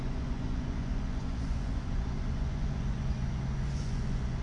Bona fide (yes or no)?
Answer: no